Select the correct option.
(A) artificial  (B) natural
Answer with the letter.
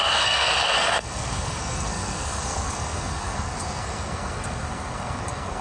A